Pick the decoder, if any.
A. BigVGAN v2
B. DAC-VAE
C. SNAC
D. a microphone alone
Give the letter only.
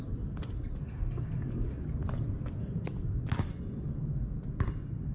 D